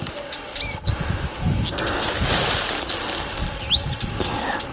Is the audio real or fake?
real